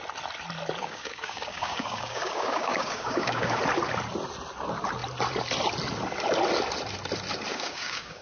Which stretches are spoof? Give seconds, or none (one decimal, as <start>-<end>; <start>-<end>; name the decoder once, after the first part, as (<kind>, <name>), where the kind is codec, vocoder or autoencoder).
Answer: 0.8-3.6 (codec, DAC); 7.5-8.2